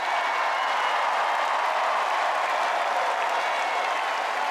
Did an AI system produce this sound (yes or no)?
no